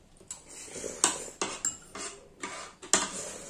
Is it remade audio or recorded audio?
recorded